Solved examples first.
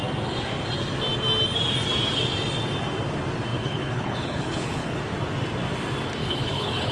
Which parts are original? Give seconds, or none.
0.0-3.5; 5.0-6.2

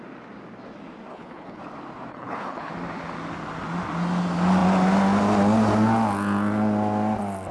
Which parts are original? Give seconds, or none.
0.0-1.1; 1.6-2.1; 2.7-7.5

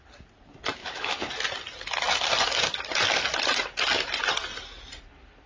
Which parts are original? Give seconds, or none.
0.0-0.8; 1.3-5.5

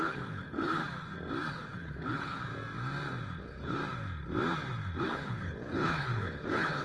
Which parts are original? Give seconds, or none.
0.8-1.5; 2.5-3.4; 3.8-5.0

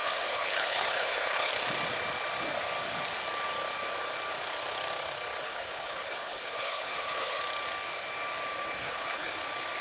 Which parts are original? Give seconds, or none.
1.5-5.4; 7.4-8.8; 9.3-9.8